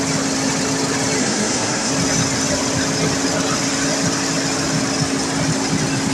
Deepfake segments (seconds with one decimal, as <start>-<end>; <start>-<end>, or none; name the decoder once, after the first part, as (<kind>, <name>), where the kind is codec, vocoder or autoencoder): 1.2-1.9 (codec, SNAC)